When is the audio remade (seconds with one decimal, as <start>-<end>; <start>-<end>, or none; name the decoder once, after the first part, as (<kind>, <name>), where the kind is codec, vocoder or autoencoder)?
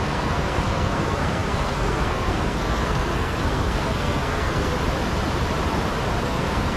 0.0-4.7 (codec, SNAC); 6.2-6.8